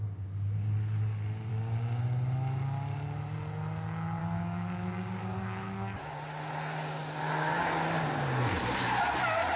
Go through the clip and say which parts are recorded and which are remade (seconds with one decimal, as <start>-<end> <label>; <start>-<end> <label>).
0.0-1.5 recorded; 1.5-2.0 remade; 2.0-4.2 recorded; 4.2-6.2 remade; 6.2-7.0 recorded; 7.0-8.3 remade; 8.3-9.6 recorded